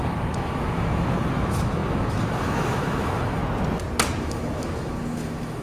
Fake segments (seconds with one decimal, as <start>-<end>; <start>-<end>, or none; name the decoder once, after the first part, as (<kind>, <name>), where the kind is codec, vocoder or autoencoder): 0.0-3.4 (autoencoder, DAC-VAE); 4.2-5.6